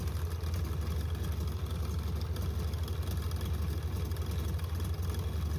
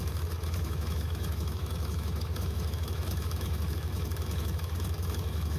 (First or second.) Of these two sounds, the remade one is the second